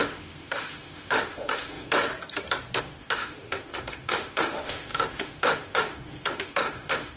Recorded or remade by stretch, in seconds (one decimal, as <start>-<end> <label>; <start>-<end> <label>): 0.0-2.1 remade; 2.1-2.8 recorded; 2.8-7.2 remade

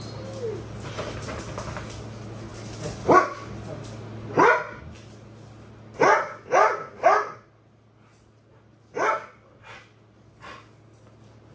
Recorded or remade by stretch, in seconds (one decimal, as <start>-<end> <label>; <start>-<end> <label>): 0.0-11.5 recorded